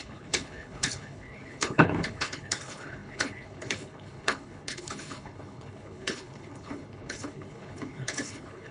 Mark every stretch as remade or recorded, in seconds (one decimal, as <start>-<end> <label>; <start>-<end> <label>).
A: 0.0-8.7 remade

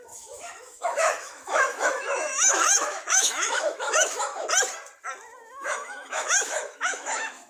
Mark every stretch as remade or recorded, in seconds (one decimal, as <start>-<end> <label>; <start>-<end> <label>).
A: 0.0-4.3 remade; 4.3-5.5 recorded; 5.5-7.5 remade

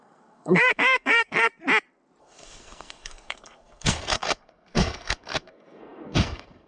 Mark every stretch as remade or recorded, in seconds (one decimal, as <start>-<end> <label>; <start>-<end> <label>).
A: 0.0-1.5 remade; 1.5-2.2 recorded; 2.2-6.7 remade

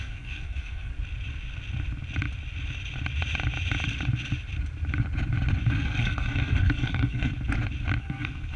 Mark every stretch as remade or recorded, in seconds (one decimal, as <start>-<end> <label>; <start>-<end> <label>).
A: 0.0-0.9 remade; 0.9-5.7 recorded; 5.7-7.3 remade; 7.3-8.0 recorded; 8.0-8.6 remade